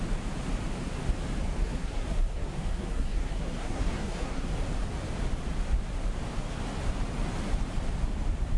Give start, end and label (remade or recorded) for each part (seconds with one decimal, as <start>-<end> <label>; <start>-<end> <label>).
0.0-1.6 recorded; 1.6-4.5 remade; 4.5-8.6 recorded